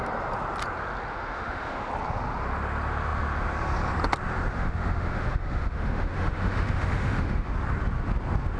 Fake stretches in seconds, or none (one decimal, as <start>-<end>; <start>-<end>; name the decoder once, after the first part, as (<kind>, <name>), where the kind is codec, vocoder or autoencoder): 1.1-1.9 (autoencoder, DAC-VAE); 4.5-7.5